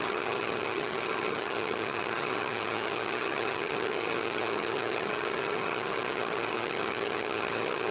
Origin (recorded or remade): remade